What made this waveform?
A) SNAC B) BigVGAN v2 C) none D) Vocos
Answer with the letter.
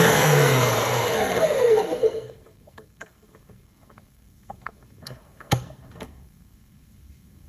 A